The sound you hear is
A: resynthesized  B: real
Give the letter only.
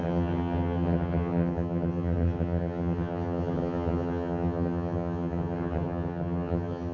A